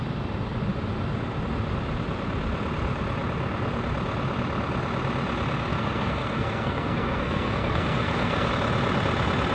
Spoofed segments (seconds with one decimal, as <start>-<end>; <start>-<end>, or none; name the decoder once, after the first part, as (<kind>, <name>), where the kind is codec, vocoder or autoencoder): 5.7-8.5 (codec, SNAC)